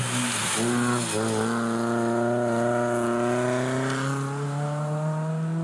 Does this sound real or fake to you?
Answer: real